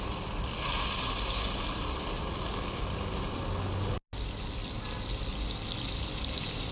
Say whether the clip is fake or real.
real